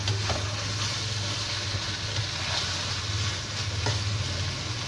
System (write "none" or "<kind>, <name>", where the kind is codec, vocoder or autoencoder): none